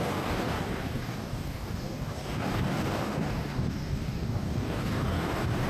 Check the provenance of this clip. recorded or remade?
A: remade